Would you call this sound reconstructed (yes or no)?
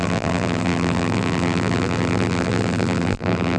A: yes